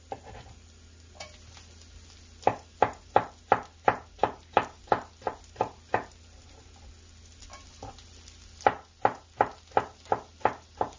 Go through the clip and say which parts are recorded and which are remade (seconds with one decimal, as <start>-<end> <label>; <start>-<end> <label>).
0.0-11.0 recorded